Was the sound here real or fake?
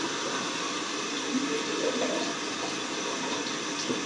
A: real